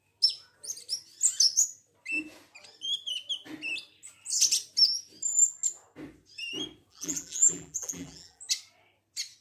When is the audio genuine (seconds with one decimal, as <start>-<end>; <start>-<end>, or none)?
0.0-6.9; 8.4-9.4